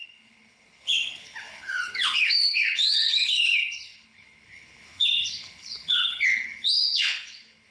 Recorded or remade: remade